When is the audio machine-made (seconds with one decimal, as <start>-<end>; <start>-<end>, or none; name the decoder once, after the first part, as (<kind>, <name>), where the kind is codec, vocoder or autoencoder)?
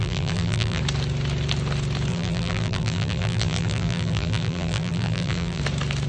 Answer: 0.0-0.8 (vocoder, BigVGAN v2); 2.1-5.6